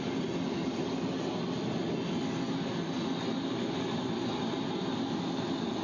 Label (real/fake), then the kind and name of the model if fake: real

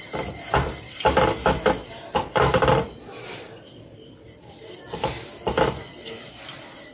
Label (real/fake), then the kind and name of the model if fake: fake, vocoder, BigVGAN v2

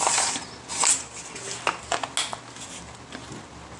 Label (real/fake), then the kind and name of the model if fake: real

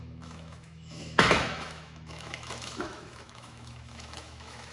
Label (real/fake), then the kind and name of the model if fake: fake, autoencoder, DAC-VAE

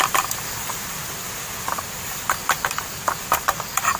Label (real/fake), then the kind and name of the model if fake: fake, vocoder, BigVGAN v2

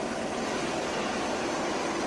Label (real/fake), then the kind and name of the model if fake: real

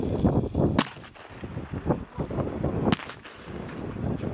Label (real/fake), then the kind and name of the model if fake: real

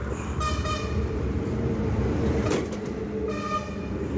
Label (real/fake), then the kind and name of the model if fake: fake, vocoder, BigVGAN v2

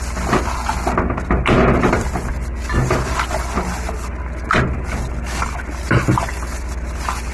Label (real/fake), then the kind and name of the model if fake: real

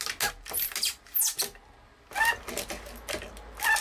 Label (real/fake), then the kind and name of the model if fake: real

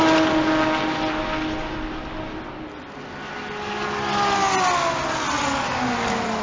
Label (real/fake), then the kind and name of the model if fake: real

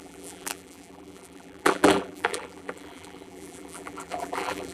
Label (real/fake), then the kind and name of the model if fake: fake, vocoder, BigVGAN v2